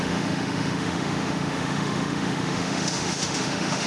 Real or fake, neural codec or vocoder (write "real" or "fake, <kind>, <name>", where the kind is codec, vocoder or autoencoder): fake, autoencoder, DAC-VAE